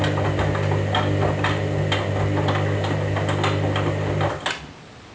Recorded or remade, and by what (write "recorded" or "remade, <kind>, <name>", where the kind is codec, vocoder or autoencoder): recorded